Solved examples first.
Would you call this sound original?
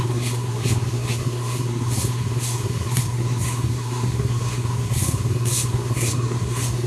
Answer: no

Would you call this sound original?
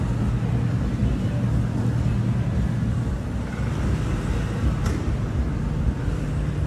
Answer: yes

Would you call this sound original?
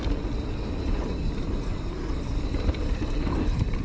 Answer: yes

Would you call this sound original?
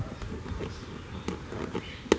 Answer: yes